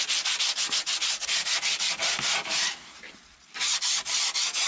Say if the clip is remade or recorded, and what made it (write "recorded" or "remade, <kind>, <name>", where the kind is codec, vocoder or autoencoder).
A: recorded